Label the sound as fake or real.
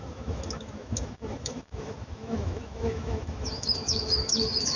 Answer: fake